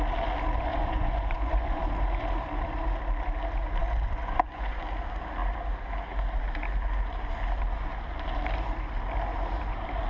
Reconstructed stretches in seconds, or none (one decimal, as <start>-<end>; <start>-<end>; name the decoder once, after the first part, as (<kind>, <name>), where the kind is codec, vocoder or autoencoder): 0.7-1.8 (vocoder, Vocos); 3.8-4.8